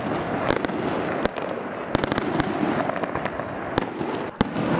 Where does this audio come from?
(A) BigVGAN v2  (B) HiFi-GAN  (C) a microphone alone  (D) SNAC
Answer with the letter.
C